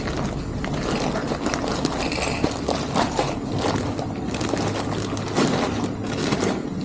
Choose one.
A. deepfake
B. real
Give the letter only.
B